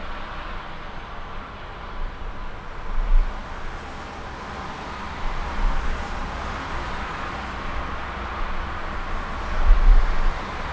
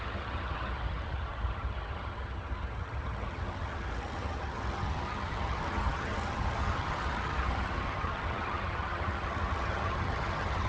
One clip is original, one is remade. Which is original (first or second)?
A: first